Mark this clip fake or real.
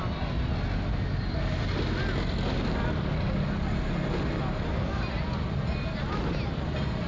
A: real